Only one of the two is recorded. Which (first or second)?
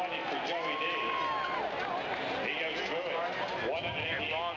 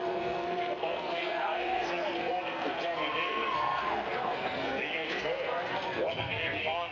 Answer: first